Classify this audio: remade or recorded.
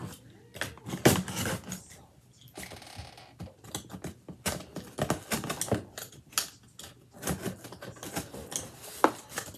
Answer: recorded